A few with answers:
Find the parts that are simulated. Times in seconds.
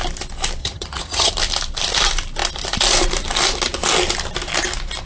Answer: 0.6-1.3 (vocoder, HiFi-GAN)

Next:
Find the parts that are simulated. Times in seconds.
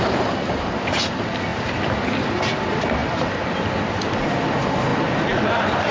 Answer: none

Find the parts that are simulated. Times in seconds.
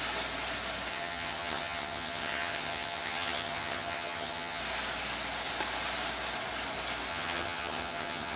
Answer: 0.9-4.6 (vocoder, HiFi-GAN); 7.1-8.4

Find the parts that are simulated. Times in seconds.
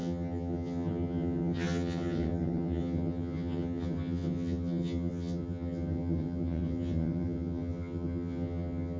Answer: 0.0-9.0 (vocoder, HiFi-GAN)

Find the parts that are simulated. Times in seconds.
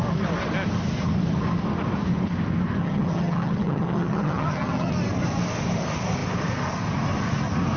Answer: 2.8-4.9 (vocoder, HiFi-GAN)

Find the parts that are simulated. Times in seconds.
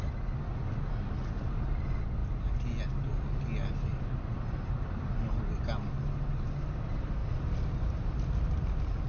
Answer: none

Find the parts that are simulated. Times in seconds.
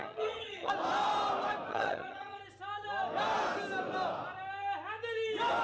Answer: 0.0-0.7 (vocoder, HiFi-GAN); 1.7-2.4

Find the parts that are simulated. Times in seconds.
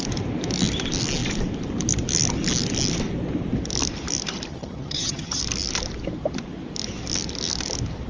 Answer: 4.5-5.4 (vocoder, HiFi-GAN)